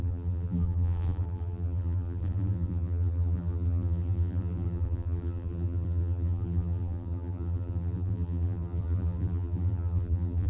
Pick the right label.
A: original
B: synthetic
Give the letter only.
B